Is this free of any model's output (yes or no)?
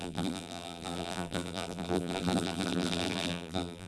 no